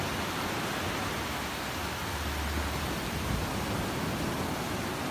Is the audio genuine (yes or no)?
yes